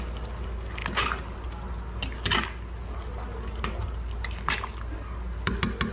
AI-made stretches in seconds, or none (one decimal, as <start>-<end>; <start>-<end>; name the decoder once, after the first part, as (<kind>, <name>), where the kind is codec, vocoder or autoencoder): none

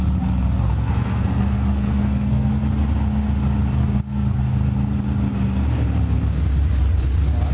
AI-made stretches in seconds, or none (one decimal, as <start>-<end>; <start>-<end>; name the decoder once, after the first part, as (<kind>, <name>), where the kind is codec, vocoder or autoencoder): 0.7-2.5 (codec, SNAC); 3.8-4.4

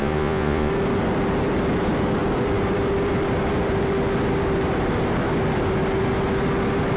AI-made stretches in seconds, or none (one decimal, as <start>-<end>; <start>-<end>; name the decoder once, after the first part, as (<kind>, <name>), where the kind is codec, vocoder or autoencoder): 0.0-0.7 (vocoder, Vocos)

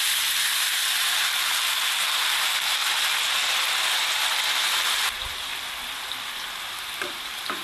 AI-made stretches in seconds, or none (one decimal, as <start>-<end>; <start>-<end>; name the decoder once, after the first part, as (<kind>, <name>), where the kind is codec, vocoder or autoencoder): 0.0-2.8 (vocoder, BigVGAN v2); 4.6-5.5; 6.7-7.6

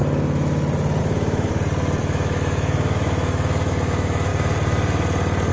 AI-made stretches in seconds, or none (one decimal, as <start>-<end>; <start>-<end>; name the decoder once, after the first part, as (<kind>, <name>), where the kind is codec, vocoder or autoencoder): 1.0-1.5 (autoencoder, DAC-VAE); 2.0-4.3

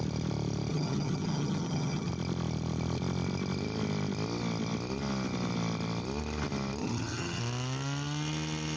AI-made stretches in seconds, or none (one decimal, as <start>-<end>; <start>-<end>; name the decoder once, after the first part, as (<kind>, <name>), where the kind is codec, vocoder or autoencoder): 0.7-2.1 (vocoder, HiFi-GAN); 6.8-7.4